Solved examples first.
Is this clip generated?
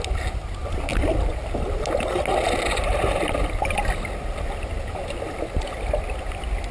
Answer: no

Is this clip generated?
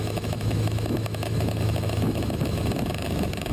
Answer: yes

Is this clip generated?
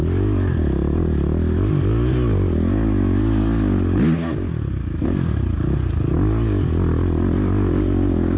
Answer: no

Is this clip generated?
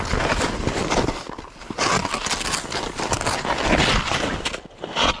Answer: no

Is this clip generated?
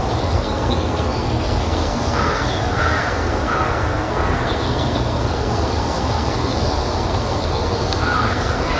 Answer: yes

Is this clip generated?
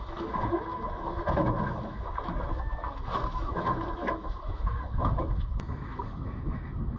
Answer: yes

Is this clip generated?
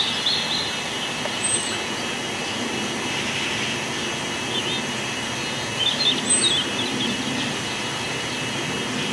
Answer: no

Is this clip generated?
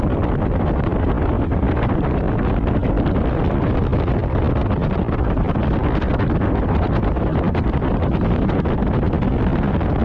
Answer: no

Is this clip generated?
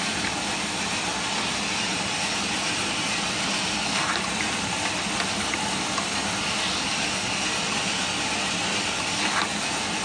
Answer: no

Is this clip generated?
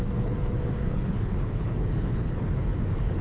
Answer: yes